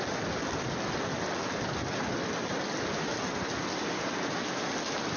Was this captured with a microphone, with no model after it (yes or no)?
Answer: yes